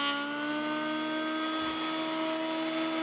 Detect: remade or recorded recorded